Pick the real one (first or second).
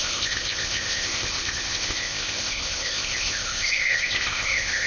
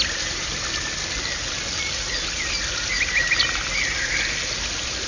second